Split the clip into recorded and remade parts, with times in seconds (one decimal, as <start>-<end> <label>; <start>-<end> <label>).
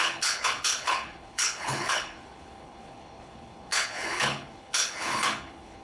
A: 0.0-5.8 remade